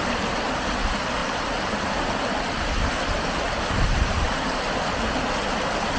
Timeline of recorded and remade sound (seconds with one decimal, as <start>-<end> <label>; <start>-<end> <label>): 0.0-1.2 recorded; 1.2-4.8 remade; 4.8-6.0 recorded